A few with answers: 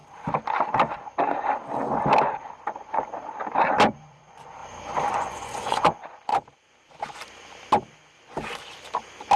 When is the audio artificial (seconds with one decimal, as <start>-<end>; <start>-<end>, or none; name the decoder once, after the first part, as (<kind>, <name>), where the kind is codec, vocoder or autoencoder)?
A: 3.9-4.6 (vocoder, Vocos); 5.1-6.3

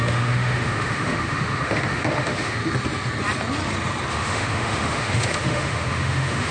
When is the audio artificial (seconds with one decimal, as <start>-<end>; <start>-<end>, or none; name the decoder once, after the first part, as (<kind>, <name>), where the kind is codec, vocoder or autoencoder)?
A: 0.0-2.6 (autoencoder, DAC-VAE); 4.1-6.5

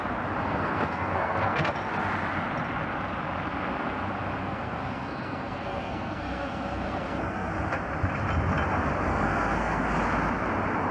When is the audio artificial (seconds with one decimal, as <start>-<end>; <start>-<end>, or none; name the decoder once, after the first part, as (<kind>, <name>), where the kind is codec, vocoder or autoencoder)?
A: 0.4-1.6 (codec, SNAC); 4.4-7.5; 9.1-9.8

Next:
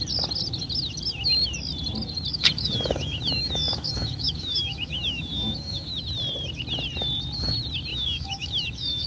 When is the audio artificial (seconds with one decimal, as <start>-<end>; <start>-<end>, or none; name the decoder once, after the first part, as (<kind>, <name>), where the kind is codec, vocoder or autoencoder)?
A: 2.3-6.0 (autoencoder, DAC-VAE); 7.9-9.1

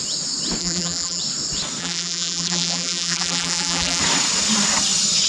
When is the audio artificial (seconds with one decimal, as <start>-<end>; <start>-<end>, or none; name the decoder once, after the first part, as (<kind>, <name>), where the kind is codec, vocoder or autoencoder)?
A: 0.6-1.2 (vocoder, BigVGAN v2); 1.8-4.0

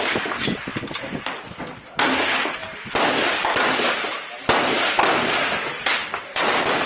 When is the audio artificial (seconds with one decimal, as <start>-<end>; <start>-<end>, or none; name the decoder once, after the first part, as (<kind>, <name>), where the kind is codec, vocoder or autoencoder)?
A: 2.6-4.4 (vocoder, BigVGAN v2); 6.0-6.9